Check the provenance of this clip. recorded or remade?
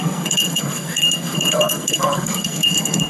remade